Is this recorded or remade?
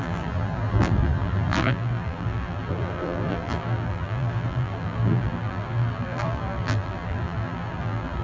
remade